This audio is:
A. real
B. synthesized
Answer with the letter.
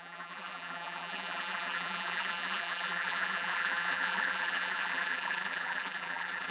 B